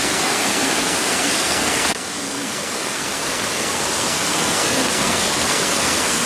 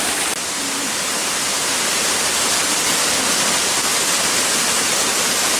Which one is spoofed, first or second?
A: first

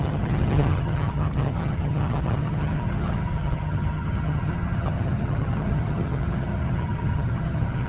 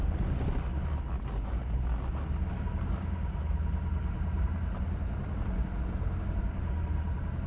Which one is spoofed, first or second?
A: first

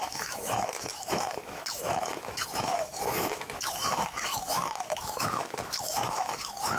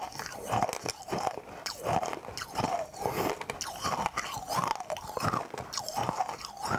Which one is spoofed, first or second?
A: first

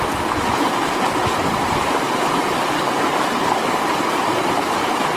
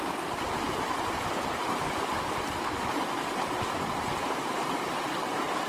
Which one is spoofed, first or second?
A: second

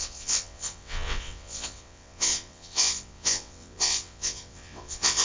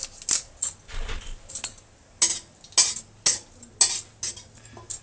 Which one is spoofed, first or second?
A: first